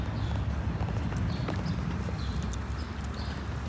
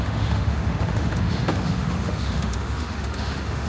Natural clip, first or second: first